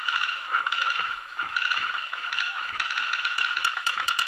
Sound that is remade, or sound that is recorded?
remade